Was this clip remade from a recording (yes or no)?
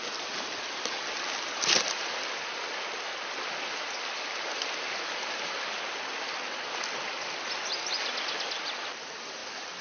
no